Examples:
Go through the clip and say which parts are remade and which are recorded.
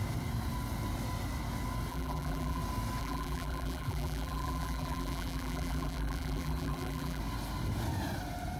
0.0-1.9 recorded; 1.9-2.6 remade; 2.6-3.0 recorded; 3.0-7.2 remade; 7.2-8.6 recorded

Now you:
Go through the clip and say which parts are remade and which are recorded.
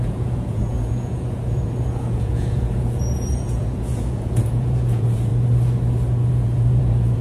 0.0-5.3 remade; 5.3-6.3 recorded; 6.3-7.2 remade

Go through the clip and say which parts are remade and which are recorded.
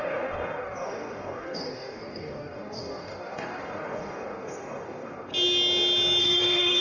0.0-5.3 remade; 5.3-6.2 recorded; 6.2-6.8 remade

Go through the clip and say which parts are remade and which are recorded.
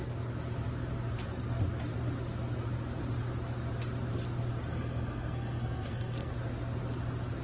0.0-4.7 recorded; 4.7-6.3 remade; 6.3-7.4 recorded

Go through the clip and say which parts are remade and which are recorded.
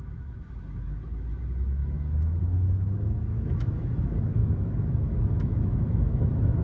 0.0-6.6 remade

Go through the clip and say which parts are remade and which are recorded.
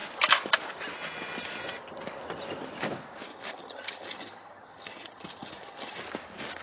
0.0-3.3 recorded; 3.3-6.0 remade; 6.0-6.6 recorded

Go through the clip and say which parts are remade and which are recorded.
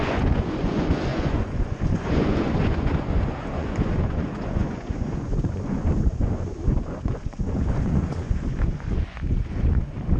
0.0-10.2 remade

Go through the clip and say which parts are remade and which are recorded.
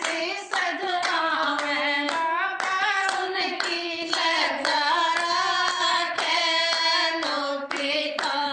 0.0-1.5 remade; 1.5-2.8 recorded; 2.8-5.0 remade; 5.0-5.9 recorded; 5.9-6.4 remade; 6.4-7.8 recorded; 7.8-8.5 remade